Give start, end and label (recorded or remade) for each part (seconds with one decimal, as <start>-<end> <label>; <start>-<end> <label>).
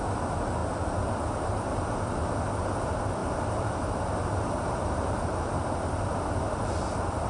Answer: 0.0-3.2 recorded; 3.2-3.7 remade; 3.7-4.4 recorded; 4.4-5.6 remade; 5.6-7.3 recorded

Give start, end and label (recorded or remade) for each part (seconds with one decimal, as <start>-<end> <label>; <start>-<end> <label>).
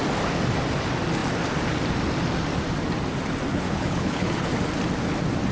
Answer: 0.0-3.5 recorded; 3.5-4.5 remade; 4.5-5.5 recorded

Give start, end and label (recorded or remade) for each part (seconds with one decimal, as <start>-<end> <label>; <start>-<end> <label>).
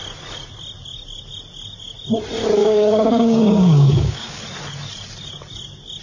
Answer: 0.0-2.6 recorded; 2.6-4.4 remade; 4.4-6.0 recorded